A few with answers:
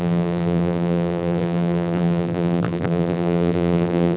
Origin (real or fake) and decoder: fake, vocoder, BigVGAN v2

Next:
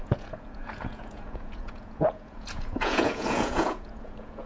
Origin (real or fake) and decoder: fake, vocoder, Vocos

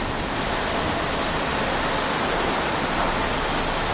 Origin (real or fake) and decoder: real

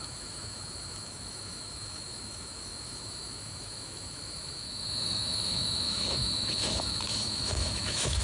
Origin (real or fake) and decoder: fake, autoencoder, DAC-VAE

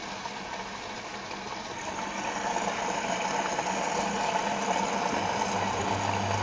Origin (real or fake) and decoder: real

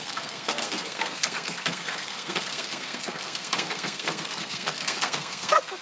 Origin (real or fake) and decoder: fake, codec, SNAC